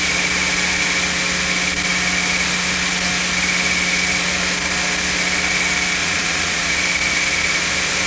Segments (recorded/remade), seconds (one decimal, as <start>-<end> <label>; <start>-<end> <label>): 0.0-6.0 recorded; 6.0-6.7 remade; 6.7-8.1 recorded